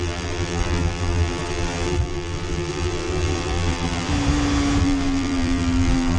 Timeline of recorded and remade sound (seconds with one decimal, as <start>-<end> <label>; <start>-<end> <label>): 0.0-4.1 remade; 4.1-4.8 recorded; 4.8-6.2 remade